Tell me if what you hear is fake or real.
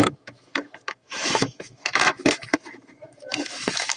fake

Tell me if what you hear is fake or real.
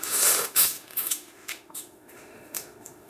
fake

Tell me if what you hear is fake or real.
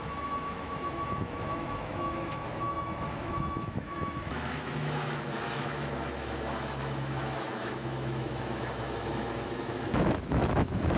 fake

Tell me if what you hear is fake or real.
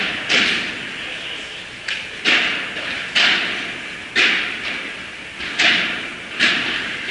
real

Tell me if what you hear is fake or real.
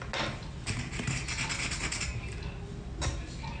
real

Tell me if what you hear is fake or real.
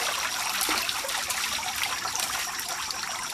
real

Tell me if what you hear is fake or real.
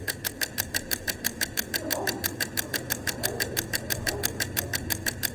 fake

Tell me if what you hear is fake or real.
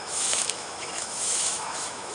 fake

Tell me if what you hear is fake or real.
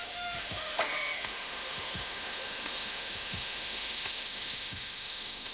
fake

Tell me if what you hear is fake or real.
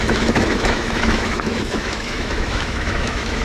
fake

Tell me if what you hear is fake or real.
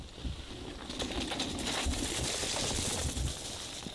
real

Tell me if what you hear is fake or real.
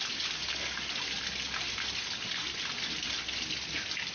real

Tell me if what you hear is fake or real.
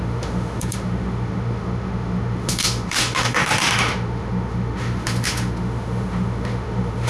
fake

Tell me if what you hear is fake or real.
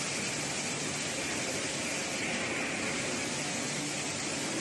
real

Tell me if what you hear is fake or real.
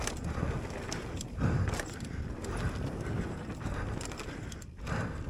real